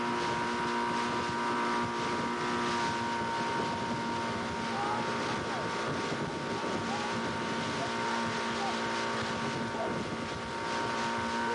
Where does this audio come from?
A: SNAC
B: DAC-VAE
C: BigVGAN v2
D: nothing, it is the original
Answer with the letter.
D